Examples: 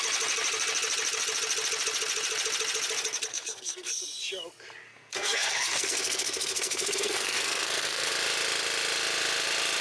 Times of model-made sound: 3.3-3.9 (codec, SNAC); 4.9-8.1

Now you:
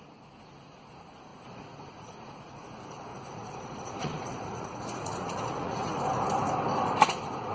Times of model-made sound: 1.3-2.7 (vocoder, Vocos); 3.1-6.0

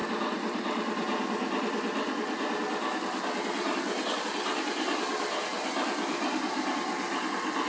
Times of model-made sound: 0.0-7.7 (vocoder, BigVGAN v2)

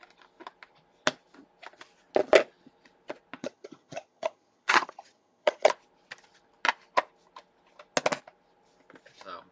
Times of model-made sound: 3.4-5.7 (vocoder, HiFi-GAN)

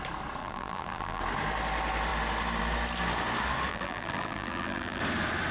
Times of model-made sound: 0.4-1.2 (vocoder, BigVGAN v2); 3.7-5.0

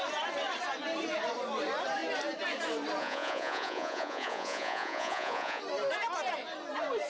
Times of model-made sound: 3.0-5.6 (vocoder, Vocos)

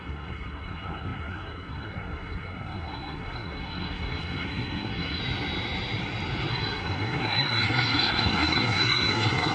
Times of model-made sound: 0.0-5.2 (codec, SNAC); 6.5-9.5

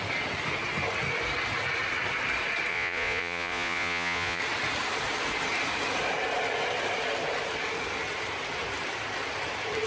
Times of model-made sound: 2.7-4.4 (vocoder, Vocos)